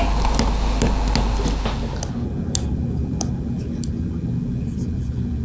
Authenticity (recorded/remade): recorded